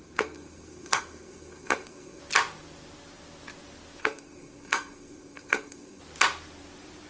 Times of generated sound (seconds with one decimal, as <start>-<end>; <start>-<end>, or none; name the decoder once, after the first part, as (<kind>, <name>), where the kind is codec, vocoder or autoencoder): 0.0-2.2 (codec, SNAC); 4.0-6.0